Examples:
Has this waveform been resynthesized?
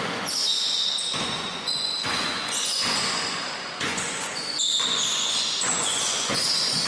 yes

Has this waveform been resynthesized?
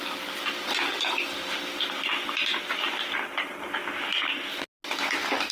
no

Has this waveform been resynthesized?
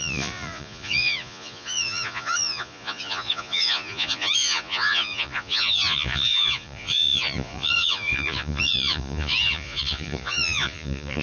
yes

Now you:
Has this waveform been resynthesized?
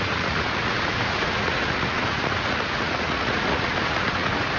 yes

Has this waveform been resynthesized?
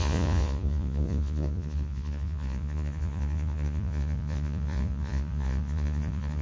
yes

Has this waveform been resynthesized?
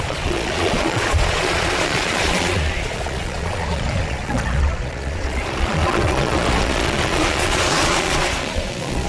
yes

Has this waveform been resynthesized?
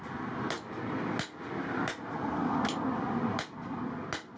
no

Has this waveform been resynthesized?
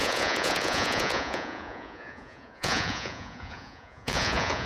yes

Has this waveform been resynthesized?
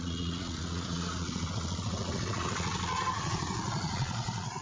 yes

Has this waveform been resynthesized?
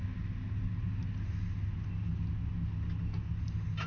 no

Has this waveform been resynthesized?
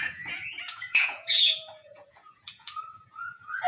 yes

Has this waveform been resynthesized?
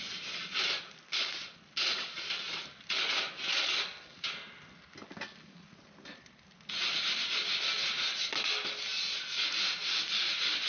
no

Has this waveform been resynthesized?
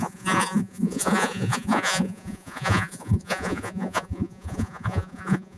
yes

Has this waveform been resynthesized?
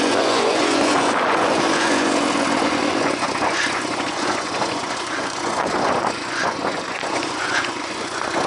yes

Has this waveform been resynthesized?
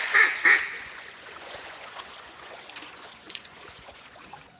yes